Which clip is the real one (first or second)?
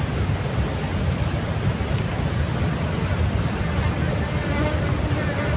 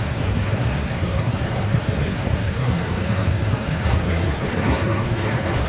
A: first